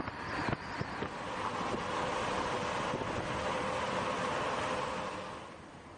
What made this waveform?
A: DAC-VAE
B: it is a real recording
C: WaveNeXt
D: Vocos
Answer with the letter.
B